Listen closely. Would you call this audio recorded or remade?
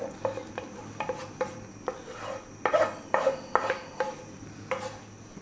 recorded